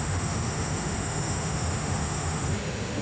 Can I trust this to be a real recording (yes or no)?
no